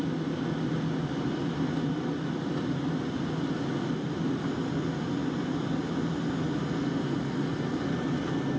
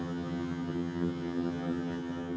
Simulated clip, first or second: second